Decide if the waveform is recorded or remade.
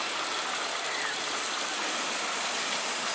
remade